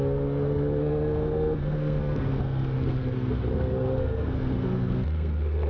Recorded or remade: remade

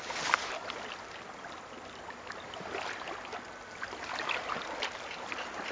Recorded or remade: recorded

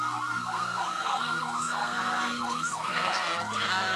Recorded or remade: remade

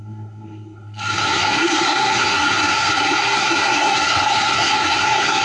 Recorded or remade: remade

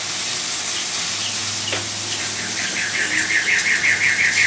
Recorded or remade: recorded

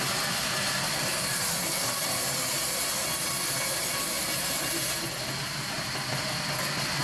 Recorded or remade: recorded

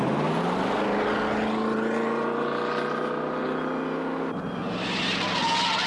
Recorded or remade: recorded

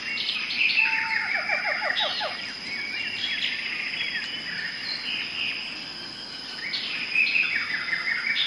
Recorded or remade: recorded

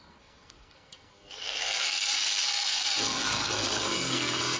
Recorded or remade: remade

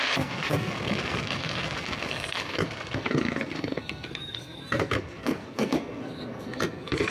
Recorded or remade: remade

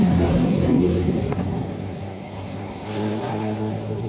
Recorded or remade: remade